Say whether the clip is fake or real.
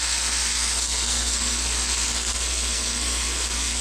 fake